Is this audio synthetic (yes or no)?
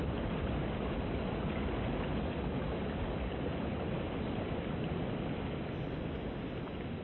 no